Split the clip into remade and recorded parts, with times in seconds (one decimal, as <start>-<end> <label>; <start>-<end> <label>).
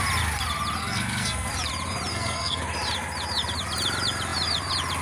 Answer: 0.0-0.8 recorded; 0.8-1.5 remade; 1.5-2.1 recorded; 2.1-2.6 remade; 2.6-5.0 recorded